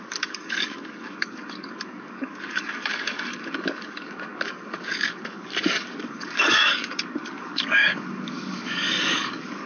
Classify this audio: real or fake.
fake